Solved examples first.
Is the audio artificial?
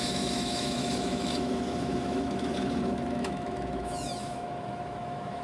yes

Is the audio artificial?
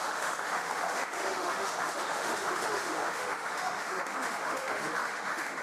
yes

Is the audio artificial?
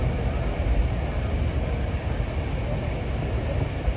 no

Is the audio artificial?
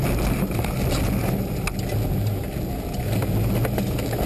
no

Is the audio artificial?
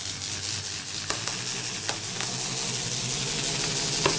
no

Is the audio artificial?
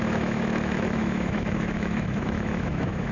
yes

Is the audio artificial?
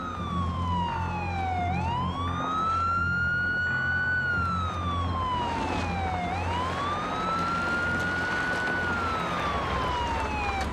no